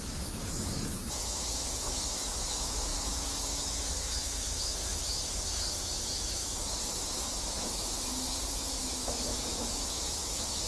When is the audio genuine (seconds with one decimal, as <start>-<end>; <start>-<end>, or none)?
none